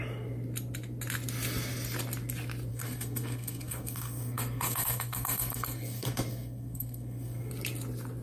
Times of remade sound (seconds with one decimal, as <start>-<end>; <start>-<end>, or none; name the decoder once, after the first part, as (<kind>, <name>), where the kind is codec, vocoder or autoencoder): 2.7-7.5 (codec, SNAC)